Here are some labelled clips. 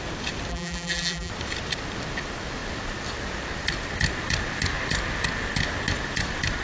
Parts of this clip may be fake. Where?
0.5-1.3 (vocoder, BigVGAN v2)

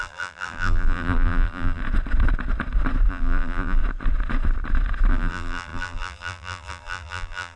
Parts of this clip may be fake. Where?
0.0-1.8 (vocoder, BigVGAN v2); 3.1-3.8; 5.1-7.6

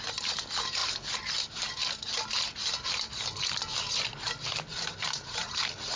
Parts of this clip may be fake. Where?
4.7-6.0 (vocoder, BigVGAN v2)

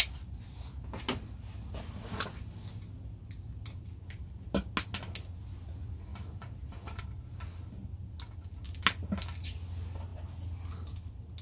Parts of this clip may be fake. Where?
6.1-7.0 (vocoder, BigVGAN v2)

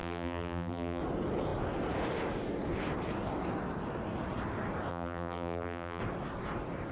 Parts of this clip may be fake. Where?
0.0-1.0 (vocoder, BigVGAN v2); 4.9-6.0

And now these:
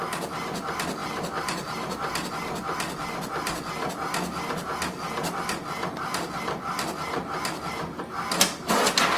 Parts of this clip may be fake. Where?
1.0-2.3 (vocoder, BigVGAN v2)

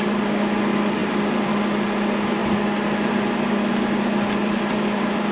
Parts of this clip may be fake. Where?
1.0-1.5 (vocoder, BigVGAN v2); 4.4-5.3